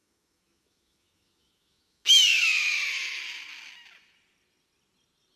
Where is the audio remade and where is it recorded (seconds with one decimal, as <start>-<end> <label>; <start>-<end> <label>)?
0.0-3.2 remade; 3.2-5.4 recorded